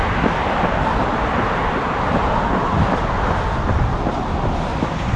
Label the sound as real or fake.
real